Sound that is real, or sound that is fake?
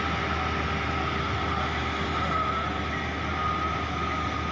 real